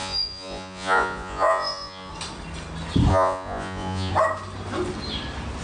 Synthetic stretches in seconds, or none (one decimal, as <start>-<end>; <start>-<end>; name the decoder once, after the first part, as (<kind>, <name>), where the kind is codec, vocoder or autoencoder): 0.0-2.1 (vocoder, Vocos); 3.1-4.1